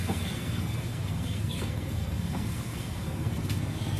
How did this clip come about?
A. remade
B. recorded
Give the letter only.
A